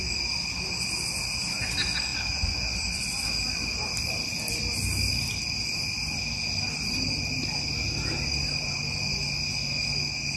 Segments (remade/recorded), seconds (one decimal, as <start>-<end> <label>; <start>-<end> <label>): 0.0-10.4 recorded